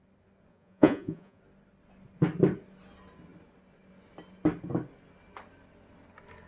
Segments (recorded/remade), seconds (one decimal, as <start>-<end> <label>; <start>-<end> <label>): 0.0-0.5 recorded; 0.5-1.4 remade; 1.4-6.5 recorded